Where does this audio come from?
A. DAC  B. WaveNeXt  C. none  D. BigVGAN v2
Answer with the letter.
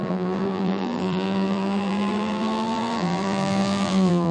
D